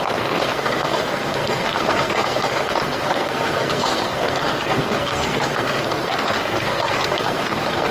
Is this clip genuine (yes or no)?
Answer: no